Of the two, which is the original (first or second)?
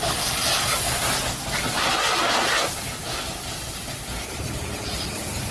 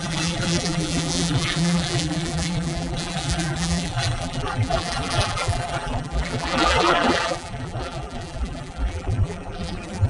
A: first